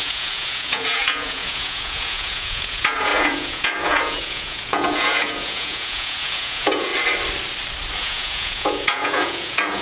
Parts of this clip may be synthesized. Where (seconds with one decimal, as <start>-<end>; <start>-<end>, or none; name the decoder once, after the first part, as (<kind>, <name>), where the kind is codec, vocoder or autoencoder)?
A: 0.0-6.9 (vocoder, Vocos); 8.0-9.8